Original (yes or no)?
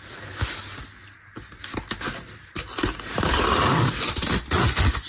yes